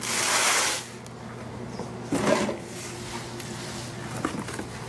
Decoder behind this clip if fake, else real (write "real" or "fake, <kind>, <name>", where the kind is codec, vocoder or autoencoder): real